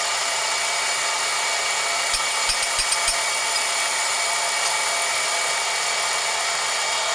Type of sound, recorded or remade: recorded